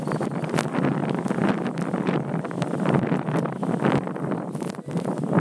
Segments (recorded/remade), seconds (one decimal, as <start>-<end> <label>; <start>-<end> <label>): 0.0-1.4 recorded; 1.4-4.6 remade; 4.6-5.4 recorded